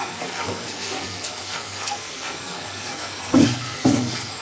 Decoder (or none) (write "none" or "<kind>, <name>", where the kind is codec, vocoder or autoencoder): codec, SNAC